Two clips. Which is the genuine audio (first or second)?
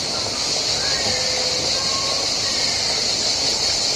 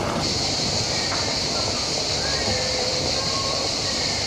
first